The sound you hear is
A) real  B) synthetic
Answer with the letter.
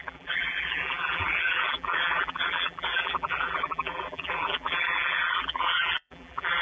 B